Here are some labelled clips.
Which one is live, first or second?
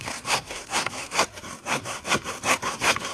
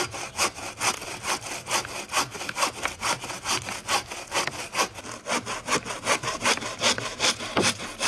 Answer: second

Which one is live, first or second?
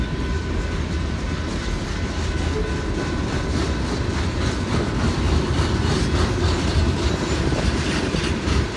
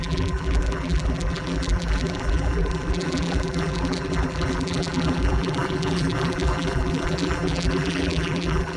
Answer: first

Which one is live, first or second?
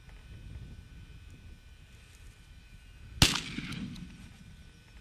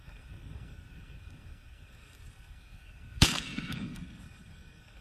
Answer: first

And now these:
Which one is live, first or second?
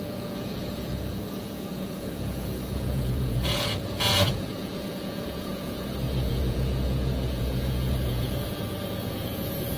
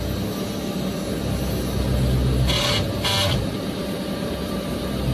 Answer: second